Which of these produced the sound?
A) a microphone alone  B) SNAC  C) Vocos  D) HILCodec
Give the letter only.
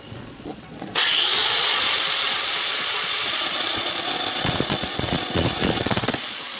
C